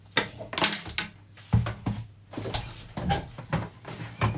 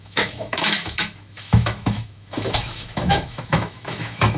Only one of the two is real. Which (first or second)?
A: first